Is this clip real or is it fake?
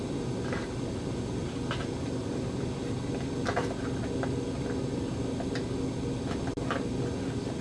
real